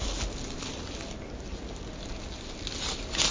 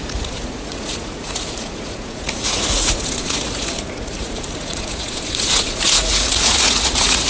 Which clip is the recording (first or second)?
first